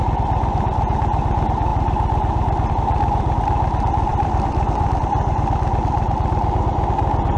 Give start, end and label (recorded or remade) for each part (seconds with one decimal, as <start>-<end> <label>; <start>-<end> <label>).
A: 0.0-4.1 recorded; 4.1-5.0 remade; 5.0-7.4 recorded